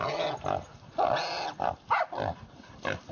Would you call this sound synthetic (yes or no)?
no